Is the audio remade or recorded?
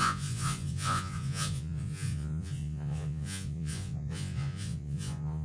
remade